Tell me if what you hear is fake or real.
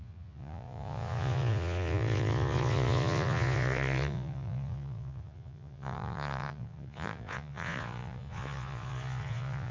fake